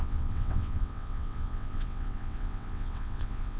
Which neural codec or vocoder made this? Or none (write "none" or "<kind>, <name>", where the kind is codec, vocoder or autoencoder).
vocoder, WaveNeXt